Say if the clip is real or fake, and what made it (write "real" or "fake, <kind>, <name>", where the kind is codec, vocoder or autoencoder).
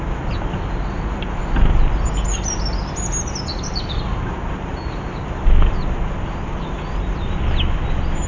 real